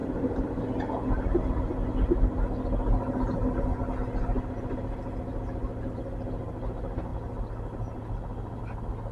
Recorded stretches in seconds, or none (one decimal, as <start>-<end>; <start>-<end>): 0.6-9.1